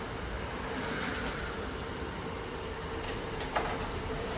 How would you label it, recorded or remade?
remade